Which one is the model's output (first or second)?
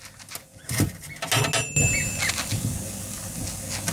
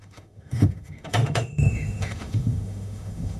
second